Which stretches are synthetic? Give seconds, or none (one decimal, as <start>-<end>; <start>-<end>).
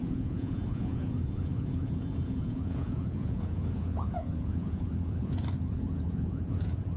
0.0-7.0